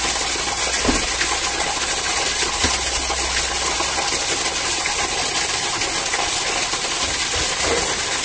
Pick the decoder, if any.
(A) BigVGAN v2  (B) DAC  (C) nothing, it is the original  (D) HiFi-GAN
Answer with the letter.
C